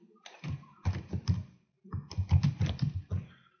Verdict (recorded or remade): recorded